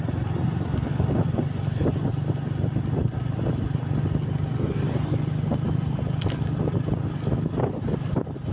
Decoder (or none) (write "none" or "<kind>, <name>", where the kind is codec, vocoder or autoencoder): none